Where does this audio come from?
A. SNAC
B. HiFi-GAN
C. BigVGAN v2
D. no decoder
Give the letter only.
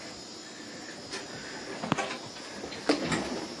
D